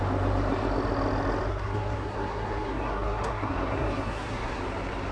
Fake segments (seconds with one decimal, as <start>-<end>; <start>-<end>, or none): 1.5-4.6